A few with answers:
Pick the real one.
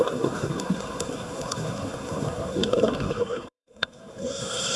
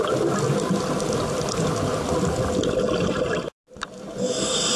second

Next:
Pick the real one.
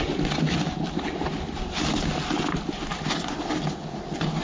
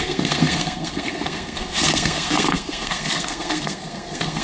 first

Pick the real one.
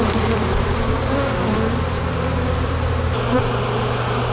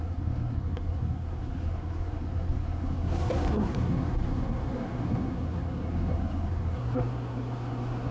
first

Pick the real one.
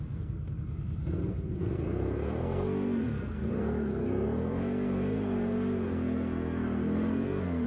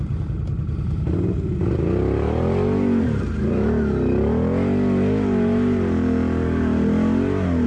second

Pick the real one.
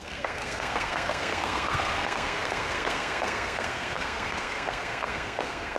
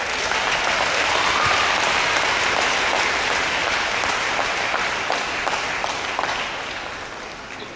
second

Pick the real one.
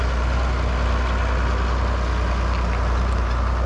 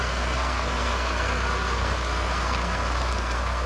first